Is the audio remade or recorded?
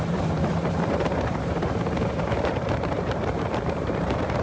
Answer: remade